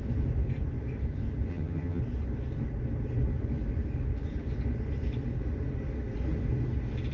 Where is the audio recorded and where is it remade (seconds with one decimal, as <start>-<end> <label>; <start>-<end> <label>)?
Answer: 0.0-1.5 recorded; 1.5-2.0 remade; 2.0-7.1 recorded